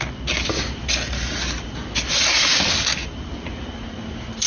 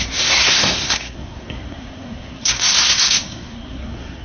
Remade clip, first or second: second